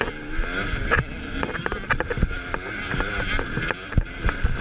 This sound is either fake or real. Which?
real